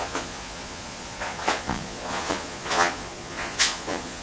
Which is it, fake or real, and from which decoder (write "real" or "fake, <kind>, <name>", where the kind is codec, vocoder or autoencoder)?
fake, vocoder, Vocos